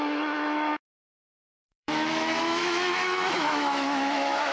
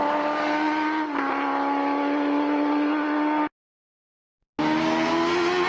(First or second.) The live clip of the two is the second